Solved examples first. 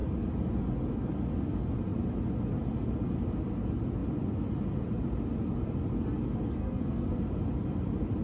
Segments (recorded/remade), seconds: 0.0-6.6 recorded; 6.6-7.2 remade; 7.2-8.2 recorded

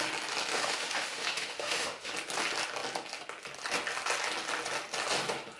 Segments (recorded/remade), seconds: 0.0-0.5 recorded; 0.5-2.1 remade; 2.1-5.6 recorded

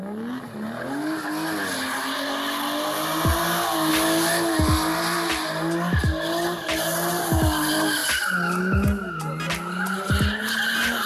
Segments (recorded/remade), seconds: 0.0-11.1 recorded

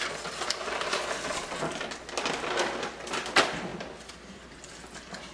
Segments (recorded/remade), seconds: 0.0-5.3 recorded